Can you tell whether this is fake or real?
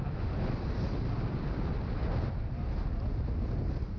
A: real